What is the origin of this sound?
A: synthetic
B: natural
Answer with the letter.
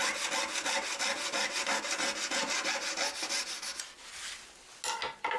B